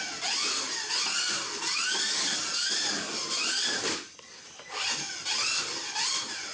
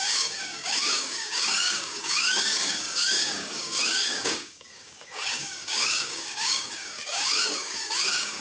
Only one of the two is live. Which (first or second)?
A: first